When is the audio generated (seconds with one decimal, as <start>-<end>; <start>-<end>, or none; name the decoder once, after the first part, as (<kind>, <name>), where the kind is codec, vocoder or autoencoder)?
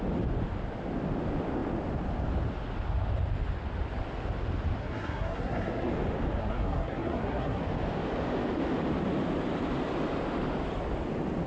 4.8-5.9 (codec, SNAC); 6.4-7.6